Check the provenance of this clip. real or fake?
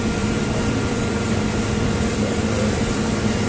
fake